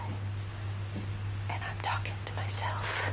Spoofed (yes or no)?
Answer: no